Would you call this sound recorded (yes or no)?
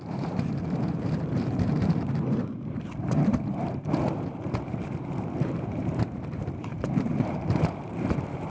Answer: no